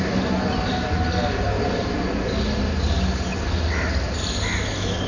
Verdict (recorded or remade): recorded